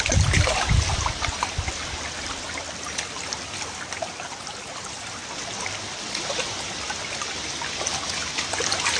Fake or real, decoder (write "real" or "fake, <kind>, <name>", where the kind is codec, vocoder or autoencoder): real